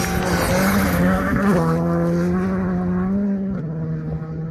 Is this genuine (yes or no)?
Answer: yes